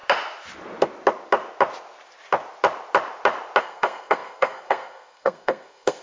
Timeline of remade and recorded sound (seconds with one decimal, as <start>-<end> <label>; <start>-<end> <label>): 0.0-3.6 recorded; 3.6-6.0 remade

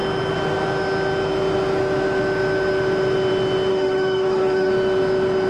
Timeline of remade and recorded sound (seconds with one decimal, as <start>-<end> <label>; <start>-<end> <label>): 0.0-3.7 recorded; 3.7-4.7 remade; 4.7-5.5 recorded